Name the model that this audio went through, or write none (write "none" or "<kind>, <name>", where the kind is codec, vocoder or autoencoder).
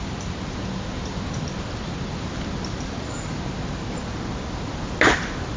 none